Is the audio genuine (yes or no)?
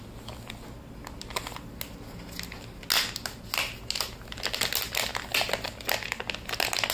yes